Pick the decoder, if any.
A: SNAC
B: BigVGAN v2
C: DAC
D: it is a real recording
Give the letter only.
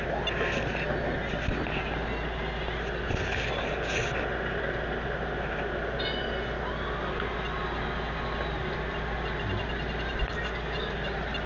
D